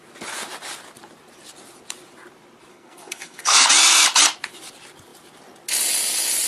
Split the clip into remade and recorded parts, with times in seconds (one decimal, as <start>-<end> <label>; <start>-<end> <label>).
0.0-2.7 recorded; 2.7-3.7 remade; 3.7-6.5 recorded